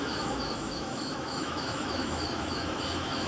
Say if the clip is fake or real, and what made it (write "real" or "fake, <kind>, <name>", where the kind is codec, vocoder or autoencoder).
fake, autoencoder, DAC-VAE